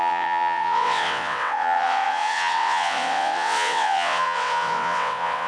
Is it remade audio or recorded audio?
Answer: remade